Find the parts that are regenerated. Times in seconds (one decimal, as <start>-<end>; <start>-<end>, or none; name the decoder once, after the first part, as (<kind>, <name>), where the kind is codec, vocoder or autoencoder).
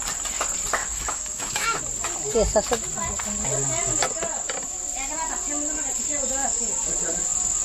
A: 0.8-1.8 (autoencoder, DAC-VAE)